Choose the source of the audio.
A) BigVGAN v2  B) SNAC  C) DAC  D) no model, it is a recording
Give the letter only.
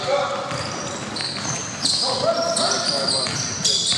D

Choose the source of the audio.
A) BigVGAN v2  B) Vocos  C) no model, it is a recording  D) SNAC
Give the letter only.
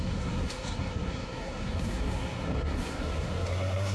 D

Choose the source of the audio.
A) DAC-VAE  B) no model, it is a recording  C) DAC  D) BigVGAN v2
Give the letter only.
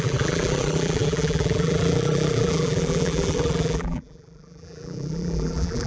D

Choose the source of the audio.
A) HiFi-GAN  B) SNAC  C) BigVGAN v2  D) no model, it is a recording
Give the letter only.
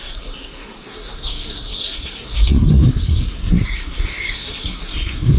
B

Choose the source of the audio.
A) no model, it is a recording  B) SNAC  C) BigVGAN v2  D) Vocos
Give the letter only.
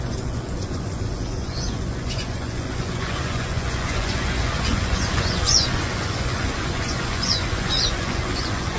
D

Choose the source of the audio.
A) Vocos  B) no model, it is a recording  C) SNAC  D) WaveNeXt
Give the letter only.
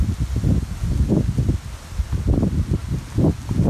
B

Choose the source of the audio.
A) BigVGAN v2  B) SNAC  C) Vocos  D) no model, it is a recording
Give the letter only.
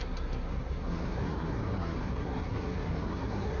B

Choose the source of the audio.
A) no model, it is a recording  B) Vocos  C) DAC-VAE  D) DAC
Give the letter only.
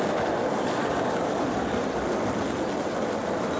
A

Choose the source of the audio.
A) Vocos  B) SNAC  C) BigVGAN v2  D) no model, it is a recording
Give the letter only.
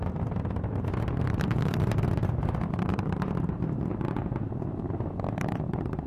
C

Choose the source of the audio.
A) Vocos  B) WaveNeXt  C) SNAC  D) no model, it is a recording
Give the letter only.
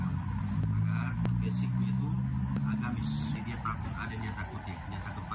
D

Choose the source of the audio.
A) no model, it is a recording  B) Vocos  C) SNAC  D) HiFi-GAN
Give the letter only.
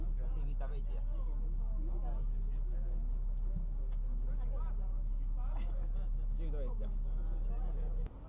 A